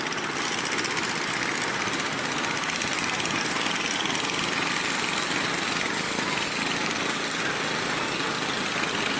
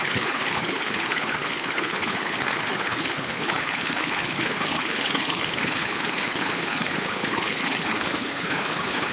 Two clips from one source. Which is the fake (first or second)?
second